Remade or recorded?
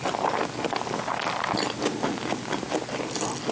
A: recorded